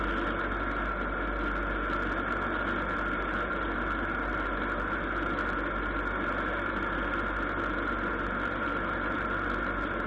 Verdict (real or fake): real